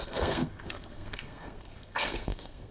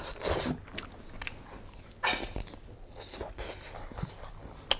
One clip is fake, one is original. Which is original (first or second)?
second